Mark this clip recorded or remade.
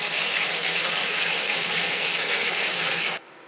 remade